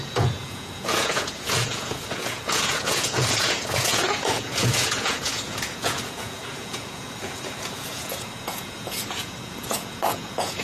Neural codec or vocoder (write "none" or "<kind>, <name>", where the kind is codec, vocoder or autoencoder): vocoder, Vocos